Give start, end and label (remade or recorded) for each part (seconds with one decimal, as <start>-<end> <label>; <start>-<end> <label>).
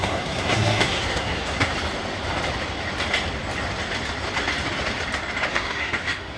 0.0-1.7 remade; 1.7-5.5 recorded; 5.5-6.4 remade